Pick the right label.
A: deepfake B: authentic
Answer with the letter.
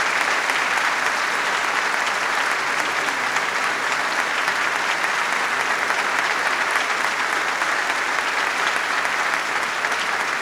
B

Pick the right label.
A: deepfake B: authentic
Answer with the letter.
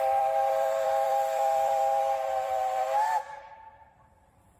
A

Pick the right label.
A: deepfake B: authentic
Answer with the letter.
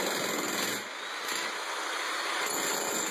B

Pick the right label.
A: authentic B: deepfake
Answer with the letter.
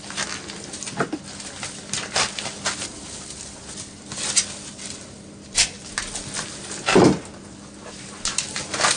A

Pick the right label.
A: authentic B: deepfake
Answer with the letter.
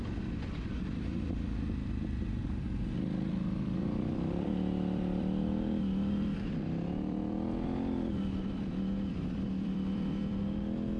B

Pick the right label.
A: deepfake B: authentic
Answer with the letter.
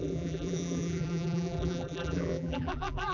A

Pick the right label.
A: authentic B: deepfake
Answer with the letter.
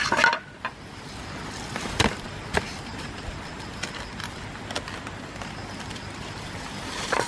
A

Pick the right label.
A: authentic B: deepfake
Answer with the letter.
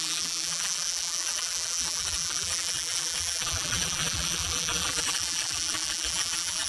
B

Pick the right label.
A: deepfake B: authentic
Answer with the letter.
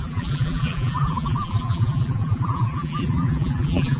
A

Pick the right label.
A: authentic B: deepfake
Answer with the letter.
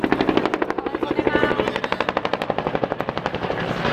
A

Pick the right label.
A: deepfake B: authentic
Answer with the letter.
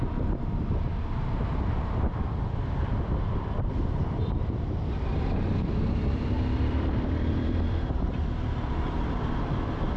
A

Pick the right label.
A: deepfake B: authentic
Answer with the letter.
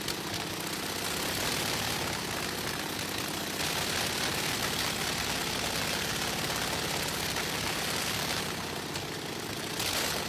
B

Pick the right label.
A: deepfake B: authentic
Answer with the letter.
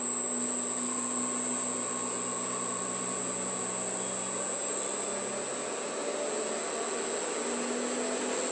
B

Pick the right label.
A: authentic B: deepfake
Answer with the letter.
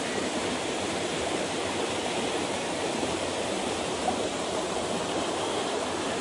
B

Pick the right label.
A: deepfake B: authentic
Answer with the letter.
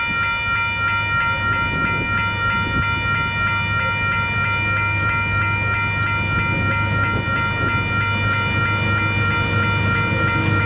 B